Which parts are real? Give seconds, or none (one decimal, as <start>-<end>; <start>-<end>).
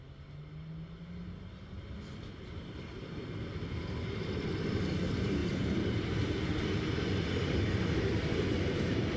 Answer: 0.0-5.4; 6.3-9.2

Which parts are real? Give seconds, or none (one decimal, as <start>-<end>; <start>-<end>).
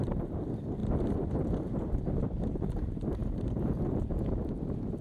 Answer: 0.0-5.0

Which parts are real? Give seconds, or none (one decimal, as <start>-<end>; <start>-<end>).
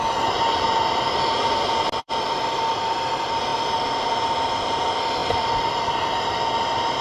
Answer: 0.0-0.7; 3.1-5.2; 5.8-7.0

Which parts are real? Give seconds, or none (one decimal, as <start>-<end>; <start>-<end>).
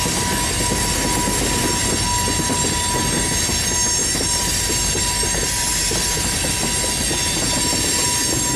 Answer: 0.0-4.0; 6.9-8.6